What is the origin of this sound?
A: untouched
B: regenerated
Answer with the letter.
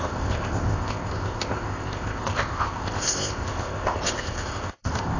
B